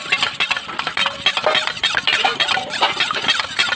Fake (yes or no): no